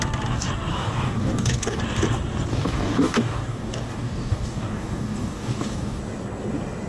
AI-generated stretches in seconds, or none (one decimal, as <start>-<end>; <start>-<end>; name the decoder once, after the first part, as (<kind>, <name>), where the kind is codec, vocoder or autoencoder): 0.7-1.8 (codec, DAC); 2.5-6.0